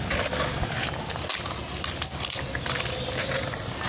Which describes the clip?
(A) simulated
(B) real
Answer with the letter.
B